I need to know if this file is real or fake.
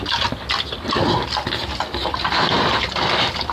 real